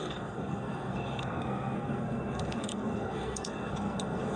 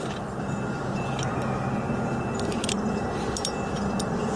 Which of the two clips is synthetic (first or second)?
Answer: first